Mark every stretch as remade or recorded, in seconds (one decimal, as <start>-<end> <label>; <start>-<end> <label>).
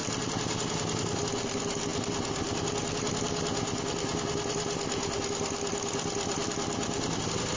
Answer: 0.0-7.6 recorded